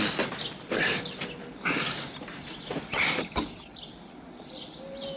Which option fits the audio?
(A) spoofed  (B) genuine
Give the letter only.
B